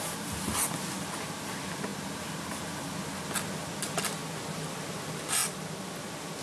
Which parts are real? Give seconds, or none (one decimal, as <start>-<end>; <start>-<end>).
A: 0.0-6.4